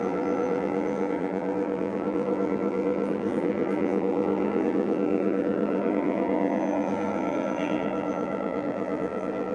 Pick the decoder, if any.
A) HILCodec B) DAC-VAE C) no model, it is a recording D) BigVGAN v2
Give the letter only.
D